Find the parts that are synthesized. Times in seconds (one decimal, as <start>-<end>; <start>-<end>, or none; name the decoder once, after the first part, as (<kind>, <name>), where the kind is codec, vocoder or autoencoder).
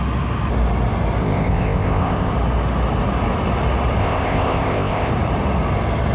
1.2-2.3 (codec, ZipCodec); 4.0-5.1